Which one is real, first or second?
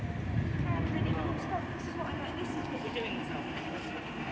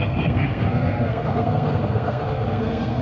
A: first